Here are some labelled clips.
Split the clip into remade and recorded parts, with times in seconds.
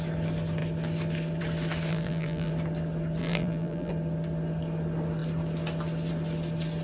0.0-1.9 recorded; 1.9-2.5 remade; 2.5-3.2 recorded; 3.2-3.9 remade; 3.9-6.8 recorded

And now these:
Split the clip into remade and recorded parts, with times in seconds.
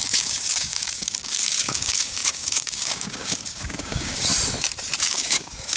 0.0-4.3 remade; 4.3-5.0 recorded; 5.0-5.8 remade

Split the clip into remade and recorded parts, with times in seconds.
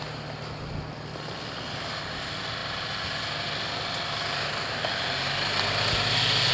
0.0-6.5 recorded